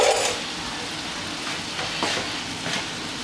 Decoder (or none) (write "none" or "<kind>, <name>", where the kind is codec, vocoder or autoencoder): none